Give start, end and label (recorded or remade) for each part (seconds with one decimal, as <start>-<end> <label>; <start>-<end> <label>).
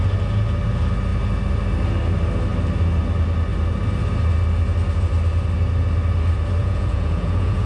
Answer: 0.0-6.6 recorded; 6.6-7.7 remade